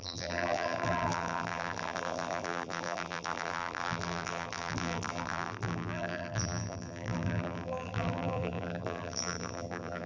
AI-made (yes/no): yes